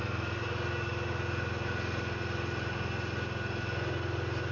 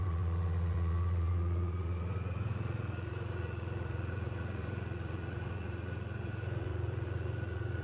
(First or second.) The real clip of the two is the first